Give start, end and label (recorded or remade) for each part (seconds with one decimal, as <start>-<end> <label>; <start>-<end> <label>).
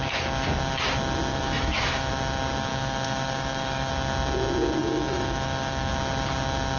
0.0-1.3 recorded; 1.3-2.1 remade; 2.1-2.7 recorded; 2.7-3.9 remade; 3.9-4.8 recorded; 4.8-5.9 remade; 5.9-6.8 recorded